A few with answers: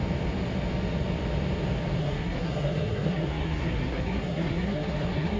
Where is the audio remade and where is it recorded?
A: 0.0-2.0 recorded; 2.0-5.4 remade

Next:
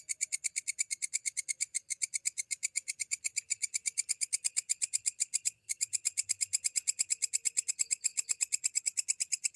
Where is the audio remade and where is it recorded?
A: 0.0-9.6 recorded

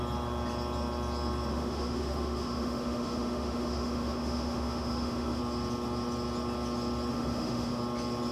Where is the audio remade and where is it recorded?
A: 0.0-1.5 recorded; 1.5-5.4 remade; 5.4-7.1 recorded; 7.1-7.8 remade; 7.8-8.3 recorded

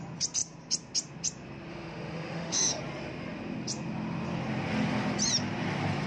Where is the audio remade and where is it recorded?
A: 0.0-1.7 recorded; 1.7-2.8 remade; 2.8-6.1 recorded

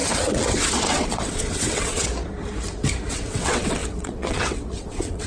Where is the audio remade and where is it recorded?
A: 0.0-2.1 remade; 2.1-3.1 recorded; 3.1-5.3 remade

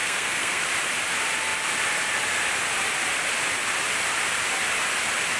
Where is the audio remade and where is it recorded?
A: 0.0-0.6 remade; 0.6-5.4 recorded

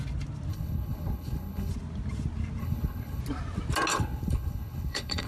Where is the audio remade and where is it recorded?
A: 0.0-0.5 recorded; 0.5-1.7 remade; 1.7-2.6 recorded; 2.6-3.2 remade; 3.2-3.9 recorded; 3.9-5.3 remade

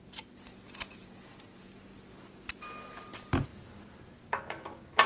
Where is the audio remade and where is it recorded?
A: 0.0-0.9 recorded; 0.9-1.7 remade; 1.7-5.1 recorded